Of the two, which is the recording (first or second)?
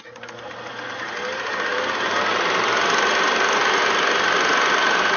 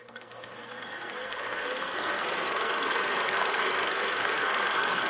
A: first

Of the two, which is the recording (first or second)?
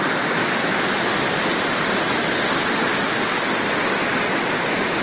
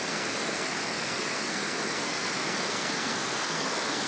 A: first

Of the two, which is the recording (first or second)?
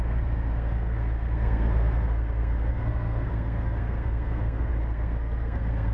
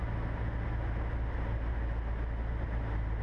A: second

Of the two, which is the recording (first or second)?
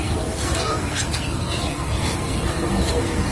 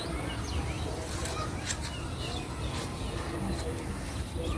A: second